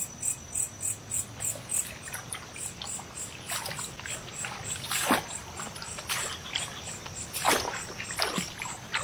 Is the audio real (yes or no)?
yes